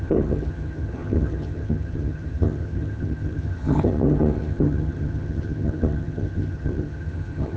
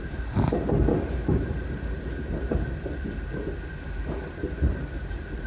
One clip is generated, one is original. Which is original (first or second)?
second